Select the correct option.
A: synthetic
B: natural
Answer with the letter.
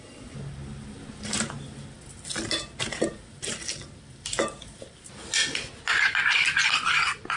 B